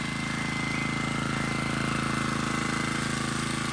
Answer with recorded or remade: recorded